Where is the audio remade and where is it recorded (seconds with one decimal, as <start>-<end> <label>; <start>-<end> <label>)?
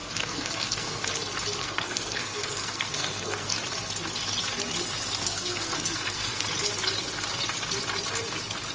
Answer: 0.0-1.1 remade; 1.1-1.6 recorded; 1.6-3.6 remade; 3.6-5.2 recorded; 5.2-6.4 remade; 6.4-8.7 recorded